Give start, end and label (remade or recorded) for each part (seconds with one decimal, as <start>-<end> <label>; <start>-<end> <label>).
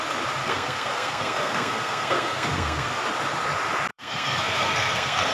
0.0-0.4 recorded; 0.4-3.0 remade; 3.0-3.9 recorded; 3.9-5.3 remade